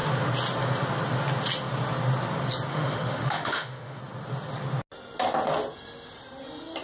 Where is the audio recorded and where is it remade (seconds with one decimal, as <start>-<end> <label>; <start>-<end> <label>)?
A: 0.0-2.7 recorded; 2.7-4.0 remade; 4.0-6.8 recorded